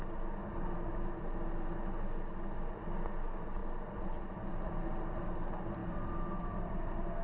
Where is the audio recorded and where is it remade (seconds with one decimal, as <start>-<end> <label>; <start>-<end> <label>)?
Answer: 0.0-7.2 recorded